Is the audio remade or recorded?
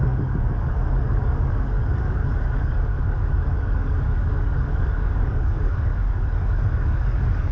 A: remade